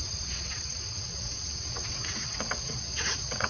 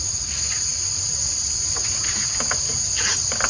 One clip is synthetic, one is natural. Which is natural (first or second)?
second